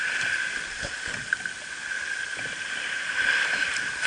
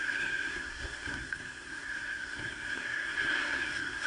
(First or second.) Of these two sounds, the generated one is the second